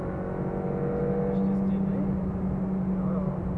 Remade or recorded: recorded